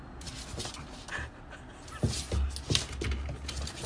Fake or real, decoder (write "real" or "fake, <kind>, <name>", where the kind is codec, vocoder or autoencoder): real